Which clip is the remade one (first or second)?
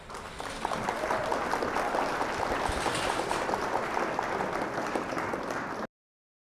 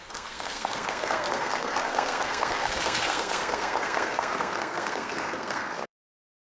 second